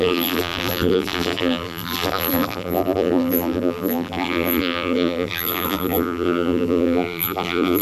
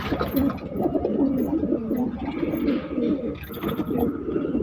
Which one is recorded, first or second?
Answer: second